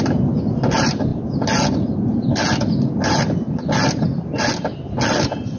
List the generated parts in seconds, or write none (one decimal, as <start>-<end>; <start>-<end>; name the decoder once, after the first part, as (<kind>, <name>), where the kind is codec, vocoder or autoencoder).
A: none